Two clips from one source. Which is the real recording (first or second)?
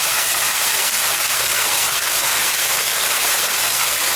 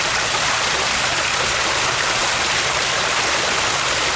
second